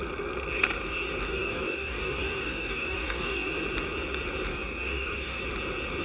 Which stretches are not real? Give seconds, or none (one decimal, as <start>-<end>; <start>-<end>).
1.3-3.5; 4.5-5.4